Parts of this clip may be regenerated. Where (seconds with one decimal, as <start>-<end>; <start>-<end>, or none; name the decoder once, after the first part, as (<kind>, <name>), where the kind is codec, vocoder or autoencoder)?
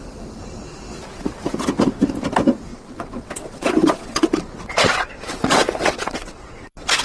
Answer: 2.7-7.0 (vocoder, WaveNeXt)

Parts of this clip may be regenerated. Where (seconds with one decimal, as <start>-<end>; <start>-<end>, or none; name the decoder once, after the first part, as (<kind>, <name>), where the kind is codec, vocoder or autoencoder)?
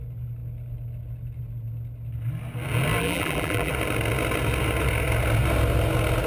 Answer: 3.0-3.7 (vocoder, BigVGAN v2)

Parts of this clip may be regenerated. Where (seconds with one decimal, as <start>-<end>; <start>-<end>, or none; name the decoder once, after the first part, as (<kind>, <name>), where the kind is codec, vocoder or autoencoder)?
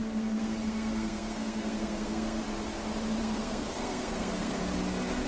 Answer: 0.0-2.4 (codec, SNAC); 3.2-4.6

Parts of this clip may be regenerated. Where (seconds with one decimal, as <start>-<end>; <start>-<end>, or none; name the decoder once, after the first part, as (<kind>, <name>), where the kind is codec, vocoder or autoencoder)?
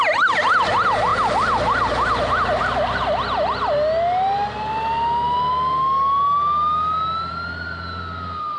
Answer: none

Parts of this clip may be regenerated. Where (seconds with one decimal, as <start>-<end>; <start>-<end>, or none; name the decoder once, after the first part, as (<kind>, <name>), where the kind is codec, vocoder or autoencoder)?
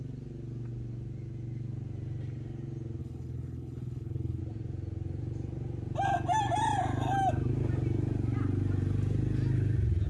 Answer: 3.0-4.4 (codec, HILCodec)